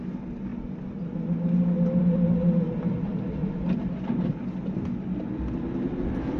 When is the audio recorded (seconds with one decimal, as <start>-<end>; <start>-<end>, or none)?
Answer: 0.0-6.4